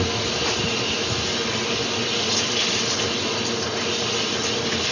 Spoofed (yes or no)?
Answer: no